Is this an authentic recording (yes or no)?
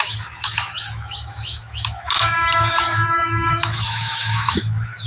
no